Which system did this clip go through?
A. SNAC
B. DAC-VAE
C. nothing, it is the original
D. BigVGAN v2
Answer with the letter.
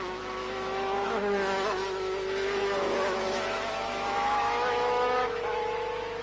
B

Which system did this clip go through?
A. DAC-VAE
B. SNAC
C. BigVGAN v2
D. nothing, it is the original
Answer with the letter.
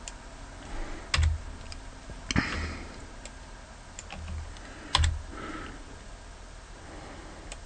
D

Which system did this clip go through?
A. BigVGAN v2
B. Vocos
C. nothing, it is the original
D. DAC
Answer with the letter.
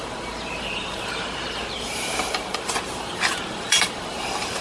A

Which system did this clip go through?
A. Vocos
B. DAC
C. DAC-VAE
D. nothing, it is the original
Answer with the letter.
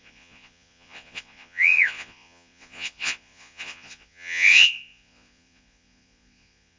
A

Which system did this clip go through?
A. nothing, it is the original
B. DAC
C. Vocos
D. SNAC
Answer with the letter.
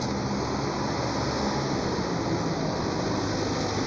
A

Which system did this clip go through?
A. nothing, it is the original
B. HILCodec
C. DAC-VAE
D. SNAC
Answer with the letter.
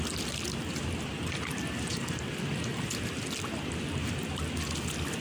A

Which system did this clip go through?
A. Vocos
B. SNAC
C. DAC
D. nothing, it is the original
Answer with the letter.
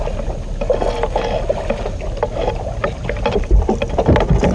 D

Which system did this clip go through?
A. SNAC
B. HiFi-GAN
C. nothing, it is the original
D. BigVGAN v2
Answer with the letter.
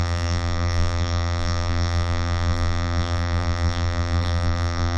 D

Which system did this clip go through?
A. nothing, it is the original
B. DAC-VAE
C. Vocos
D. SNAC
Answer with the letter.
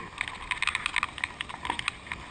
A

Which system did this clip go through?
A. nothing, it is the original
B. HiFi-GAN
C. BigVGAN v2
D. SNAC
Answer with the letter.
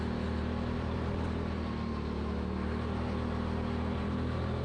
A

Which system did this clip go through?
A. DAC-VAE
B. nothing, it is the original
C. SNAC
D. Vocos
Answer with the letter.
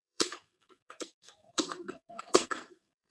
C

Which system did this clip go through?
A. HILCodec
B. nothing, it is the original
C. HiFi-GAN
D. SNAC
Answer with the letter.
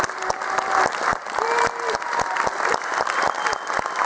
B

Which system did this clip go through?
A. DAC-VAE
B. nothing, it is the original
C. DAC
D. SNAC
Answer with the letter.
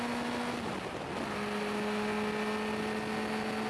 B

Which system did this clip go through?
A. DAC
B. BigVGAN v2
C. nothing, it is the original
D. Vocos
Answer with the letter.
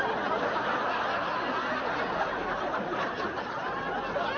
C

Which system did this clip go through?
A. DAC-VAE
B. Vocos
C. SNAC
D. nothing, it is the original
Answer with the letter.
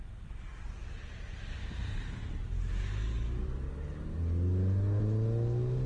D